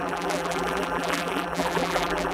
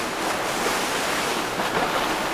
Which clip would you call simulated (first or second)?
first